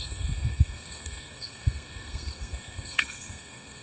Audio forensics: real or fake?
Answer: fake